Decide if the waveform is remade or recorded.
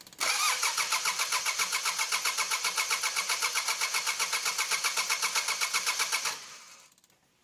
recorded